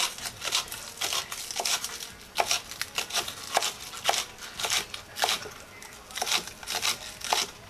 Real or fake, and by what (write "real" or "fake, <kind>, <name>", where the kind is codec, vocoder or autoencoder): real